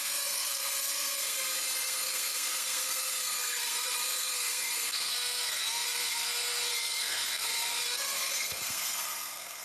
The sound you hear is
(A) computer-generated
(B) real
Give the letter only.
A